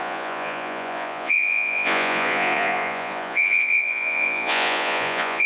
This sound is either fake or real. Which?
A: fake